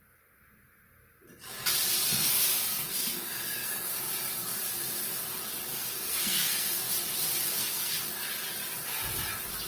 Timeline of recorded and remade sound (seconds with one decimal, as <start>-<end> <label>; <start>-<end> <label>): 0.0-2.1 recorded; 2.1-4.0 remade; 4.0-5.7 recorded; 5.7-6.9 remade; 6.9-7.5 recorded; 7.5-8.0 remade; 8.0-9.7 recorded